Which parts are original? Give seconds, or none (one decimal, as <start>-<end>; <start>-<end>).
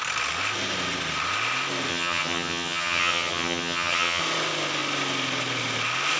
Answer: 0.0-1.9; 4.2-6.2